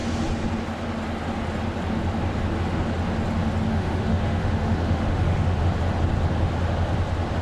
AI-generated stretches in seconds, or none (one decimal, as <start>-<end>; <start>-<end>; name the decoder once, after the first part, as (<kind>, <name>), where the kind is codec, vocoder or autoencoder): 3.7-5.6 (autoencoder, DAC-VAE)